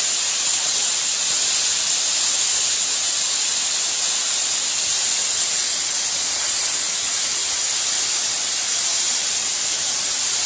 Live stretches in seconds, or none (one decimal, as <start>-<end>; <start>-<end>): 0.0-10.5